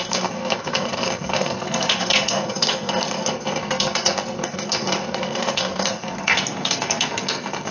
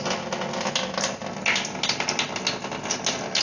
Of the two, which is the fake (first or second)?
first